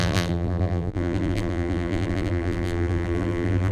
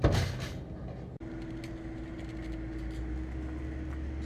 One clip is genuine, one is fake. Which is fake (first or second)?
first